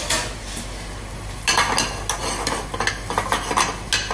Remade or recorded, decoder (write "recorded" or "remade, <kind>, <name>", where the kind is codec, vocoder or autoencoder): recorded